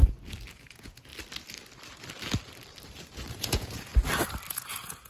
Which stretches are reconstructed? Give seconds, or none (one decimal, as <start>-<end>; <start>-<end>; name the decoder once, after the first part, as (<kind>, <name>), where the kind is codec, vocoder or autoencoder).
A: 0.5-1.1 (vocoder, Vocos); 3.3-3.9; 4.5-5.1